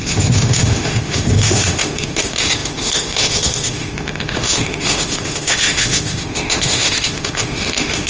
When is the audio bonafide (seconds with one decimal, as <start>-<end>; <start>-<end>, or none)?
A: none